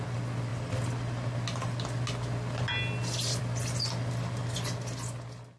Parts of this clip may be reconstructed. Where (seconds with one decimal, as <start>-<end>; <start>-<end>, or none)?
none